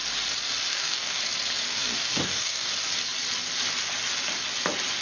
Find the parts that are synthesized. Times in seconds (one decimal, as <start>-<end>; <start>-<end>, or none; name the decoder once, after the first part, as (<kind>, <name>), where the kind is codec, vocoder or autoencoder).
0.7-1.2 (codec, DAC); 1.7-2.7